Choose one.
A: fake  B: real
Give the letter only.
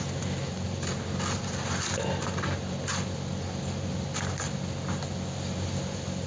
B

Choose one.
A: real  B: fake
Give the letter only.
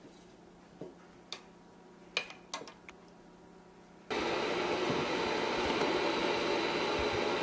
A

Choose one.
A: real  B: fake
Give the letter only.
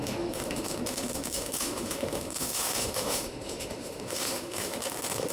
B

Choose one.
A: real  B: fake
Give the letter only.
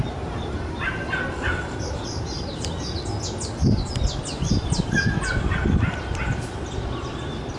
A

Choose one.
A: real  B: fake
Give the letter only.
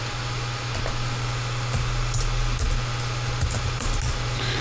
A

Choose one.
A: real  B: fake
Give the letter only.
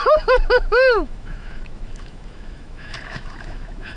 B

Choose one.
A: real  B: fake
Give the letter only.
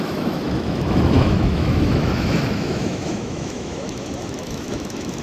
B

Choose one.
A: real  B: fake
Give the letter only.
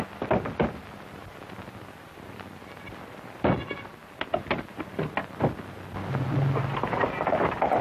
A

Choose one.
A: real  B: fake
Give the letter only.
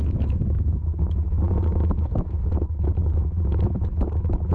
B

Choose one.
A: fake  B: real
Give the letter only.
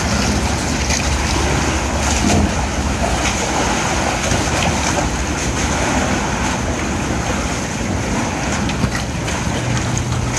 B